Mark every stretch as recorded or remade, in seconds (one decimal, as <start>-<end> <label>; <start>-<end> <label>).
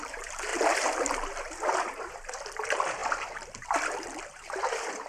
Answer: 0.0-5.1 remade